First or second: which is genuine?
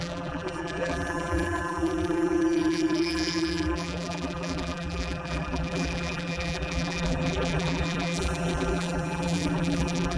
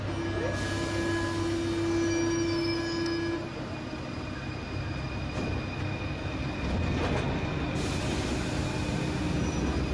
second